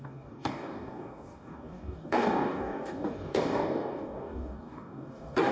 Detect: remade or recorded remade